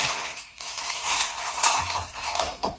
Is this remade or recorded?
remade